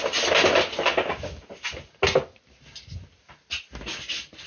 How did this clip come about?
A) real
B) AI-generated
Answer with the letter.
A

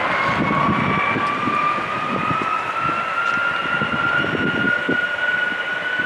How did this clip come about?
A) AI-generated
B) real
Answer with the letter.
B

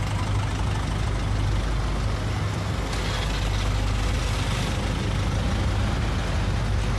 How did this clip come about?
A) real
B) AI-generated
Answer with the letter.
A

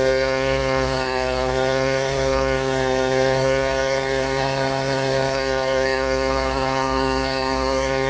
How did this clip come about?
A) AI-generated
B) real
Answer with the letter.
A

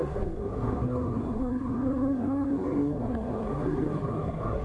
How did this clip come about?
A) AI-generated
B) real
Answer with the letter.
A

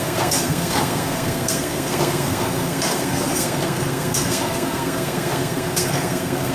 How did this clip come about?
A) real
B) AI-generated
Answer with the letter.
B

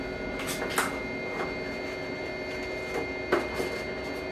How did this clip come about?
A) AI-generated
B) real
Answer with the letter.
B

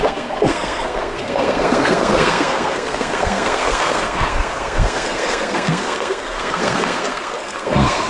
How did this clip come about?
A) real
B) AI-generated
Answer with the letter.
B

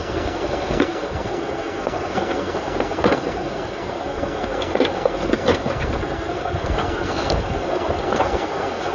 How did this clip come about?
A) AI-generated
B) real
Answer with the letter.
A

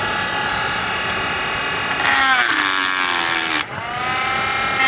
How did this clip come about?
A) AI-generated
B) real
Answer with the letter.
B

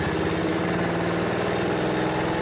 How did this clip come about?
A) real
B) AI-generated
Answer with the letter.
A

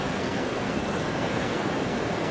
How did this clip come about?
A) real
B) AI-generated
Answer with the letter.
B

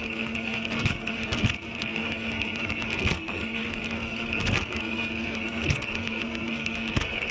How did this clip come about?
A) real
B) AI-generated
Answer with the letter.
B